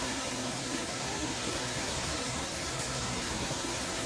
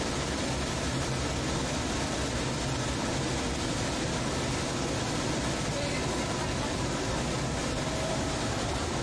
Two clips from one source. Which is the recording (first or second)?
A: second